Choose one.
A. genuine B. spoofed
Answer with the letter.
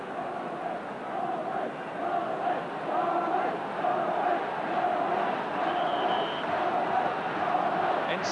A